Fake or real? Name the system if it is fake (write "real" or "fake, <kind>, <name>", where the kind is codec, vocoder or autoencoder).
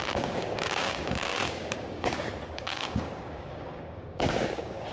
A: fake, codec, DAC